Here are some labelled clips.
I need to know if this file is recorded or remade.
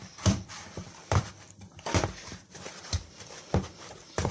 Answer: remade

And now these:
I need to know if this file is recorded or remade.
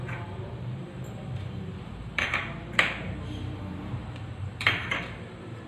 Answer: remade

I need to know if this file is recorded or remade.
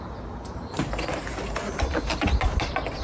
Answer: recorded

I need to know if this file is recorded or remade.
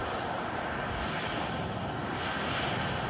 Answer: recorded